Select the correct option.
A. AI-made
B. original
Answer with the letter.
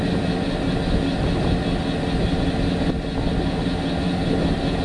B